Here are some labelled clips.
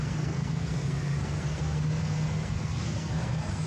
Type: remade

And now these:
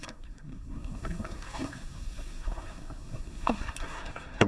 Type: remade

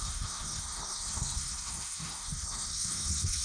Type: remade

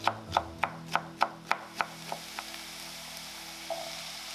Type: recorded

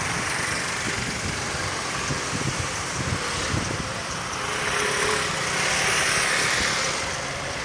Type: recorded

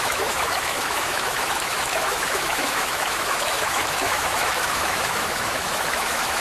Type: remade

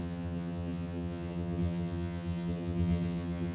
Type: remade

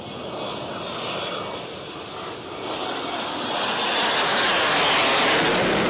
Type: recorded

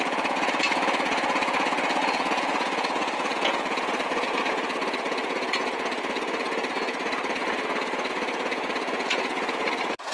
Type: remade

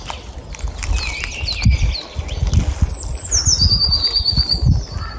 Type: recorded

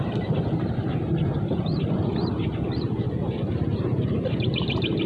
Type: remade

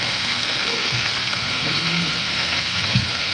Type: remade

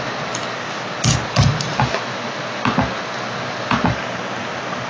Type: recorded